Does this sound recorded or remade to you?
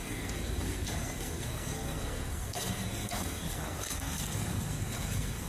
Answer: remade